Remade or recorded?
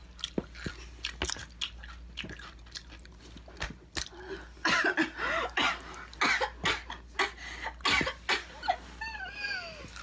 recorded